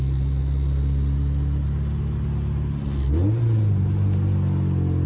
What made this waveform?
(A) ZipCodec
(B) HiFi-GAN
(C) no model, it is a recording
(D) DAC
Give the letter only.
C